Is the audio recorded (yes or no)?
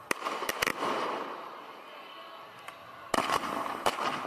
yes